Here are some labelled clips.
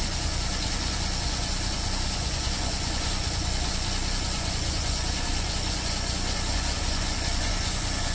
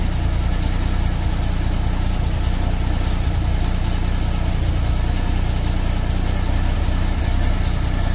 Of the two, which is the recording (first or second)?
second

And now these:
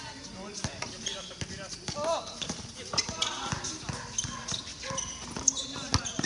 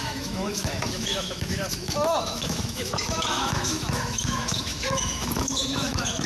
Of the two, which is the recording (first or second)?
first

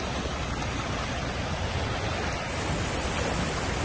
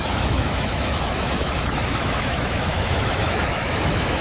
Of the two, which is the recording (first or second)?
first